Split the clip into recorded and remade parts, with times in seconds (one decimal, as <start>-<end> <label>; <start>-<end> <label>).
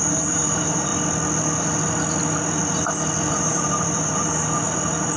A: 0.0-0.9 remade; 0.9-3.3 recorded; 3.3-5.2 remade